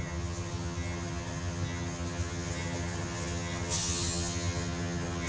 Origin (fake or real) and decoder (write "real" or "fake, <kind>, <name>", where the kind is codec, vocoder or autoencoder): fake, vocoder, HiFi-GAN